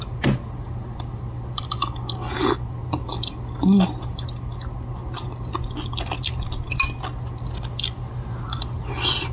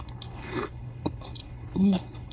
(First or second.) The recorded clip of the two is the first